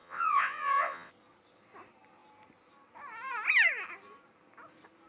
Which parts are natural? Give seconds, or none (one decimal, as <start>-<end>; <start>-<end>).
1.1-5.1